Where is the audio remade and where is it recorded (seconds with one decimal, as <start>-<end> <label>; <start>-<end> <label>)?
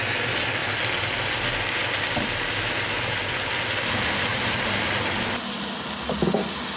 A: 0.0-6.8 recorded